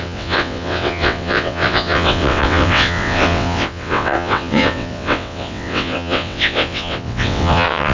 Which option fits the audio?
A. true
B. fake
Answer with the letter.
B